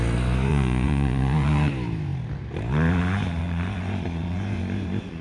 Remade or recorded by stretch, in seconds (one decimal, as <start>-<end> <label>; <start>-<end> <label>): 0.0-0.5 recorded; 0.5-1.7 remade; 1.7-3.4 recorded; 3.4-5.2 remade